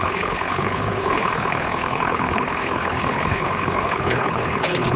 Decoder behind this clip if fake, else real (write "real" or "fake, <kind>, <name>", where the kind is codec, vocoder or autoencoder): fake, codec, HILCodec